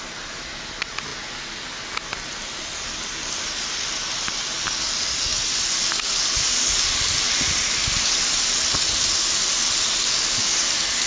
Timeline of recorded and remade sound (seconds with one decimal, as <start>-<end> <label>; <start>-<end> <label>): 0.0-11.1 recorded